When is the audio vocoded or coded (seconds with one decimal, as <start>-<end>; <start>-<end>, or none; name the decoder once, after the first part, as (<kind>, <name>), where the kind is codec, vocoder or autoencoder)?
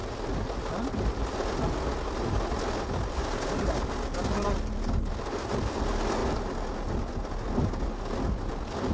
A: none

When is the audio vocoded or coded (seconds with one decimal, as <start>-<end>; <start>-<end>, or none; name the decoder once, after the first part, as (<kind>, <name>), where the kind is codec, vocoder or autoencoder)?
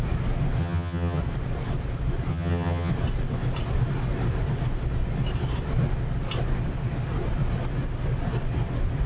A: 0.6-1.2 (vocoder, HiFi-GAN); 2.3-2.9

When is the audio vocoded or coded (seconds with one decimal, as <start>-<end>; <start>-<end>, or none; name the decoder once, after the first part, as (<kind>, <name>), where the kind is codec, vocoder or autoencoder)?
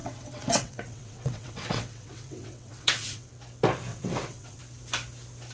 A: 0.0-3.3 (vocoder, WaveNeXt); 3.9-4.6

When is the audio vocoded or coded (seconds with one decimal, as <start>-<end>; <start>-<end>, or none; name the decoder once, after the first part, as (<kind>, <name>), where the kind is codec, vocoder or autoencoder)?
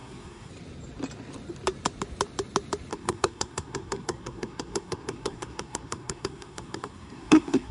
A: 0.0-0.5 (codec, SNAC); 2.9-7.7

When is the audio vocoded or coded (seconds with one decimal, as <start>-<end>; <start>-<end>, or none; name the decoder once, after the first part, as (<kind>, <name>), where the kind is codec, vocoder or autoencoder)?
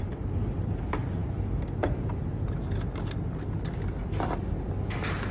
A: none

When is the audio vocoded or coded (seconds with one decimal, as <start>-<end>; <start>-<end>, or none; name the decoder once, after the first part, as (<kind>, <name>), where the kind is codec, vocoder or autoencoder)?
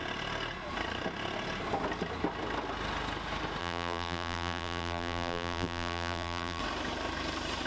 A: 3.6-6.6 (vocoder, BigVGAN v2)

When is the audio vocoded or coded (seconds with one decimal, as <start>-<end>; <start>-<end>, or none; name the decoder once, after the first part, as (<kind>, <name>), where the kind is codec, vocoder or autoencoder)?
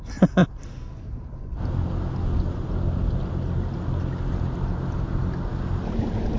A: none